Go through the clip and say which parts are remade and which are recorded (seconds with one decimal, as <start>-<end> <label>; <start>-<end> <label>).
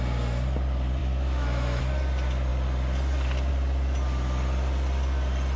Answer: 0.0-1.0 recorded; 1.0-1.8 remade; 1.8-5.6 recorded